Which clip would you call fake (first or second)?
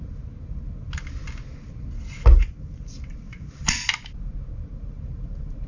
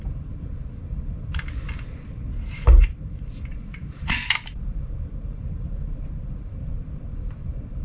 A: second